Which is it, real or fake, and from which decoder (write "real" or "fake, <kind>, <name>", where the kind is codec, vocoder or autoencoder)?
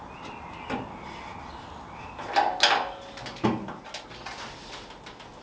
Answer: real